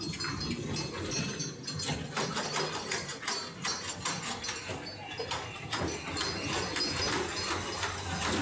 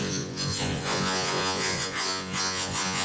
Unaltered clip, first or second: first